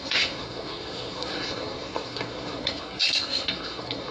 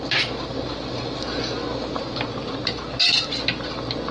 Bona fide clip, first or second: second